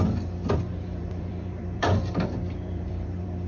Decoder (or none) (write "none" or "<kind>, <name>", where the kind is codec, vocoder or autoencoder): vocoder, BigVGAN v2